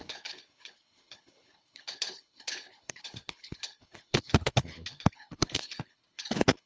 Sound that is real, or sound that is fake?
fake